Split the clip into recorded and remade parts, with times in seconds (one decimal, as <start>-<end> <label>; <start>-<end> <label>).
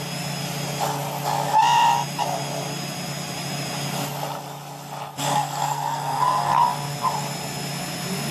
0.0-5.2 recorded; 5.2-6.6 remade; 6.6-8.3 recorded